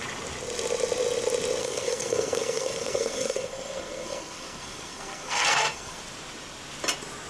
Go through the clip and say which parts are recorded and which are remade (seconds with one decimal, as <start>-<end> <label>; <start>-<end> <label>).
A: 0.0-1.6 recorded; 1.6-6.0 remade; 6.0-7.3 recorded